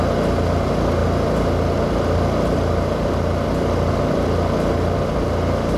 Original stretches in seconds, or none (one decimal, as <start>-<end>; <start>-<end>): 0.0-5.8